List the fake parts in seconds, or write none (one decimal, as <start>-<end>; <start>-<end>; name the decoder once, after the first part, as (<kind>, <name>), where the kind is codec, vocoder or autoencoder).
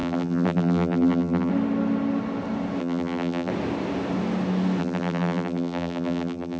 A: 0.0-1.5 (vocoder, BigVGAN v2); 2.8-3.5; 4.8-6.6